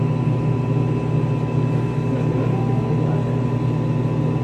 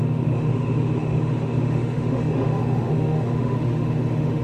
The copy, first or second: second